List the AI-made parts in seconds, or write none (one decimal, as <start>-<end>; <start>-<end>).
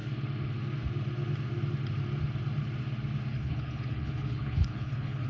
3.3-5.3